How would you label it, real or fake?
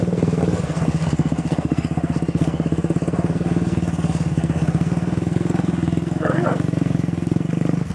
fake